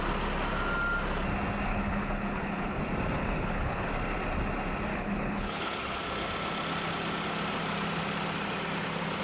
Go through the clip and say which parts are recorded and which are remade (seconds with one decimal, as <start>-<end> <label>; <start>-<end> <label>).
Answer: 0.0-1.7 recorded; 1.7-2.8 remade; 2.8-3.2 recorded; 3.2-3.9 remade; 3.9-4.9 recorded; 4.9-6.0 remade; 6.0-9.2 recorded